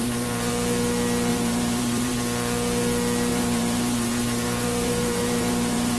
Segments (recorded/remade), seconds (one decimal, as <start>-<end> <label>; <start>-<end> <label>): 0.0-0.5 remade; 0.5-1.3 recorded; 1.3-2.2 remade; 2.2-3.3 recorded; 3.3-6.0 remade